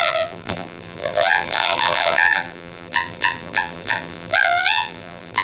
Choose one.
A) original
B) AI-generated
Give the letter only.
B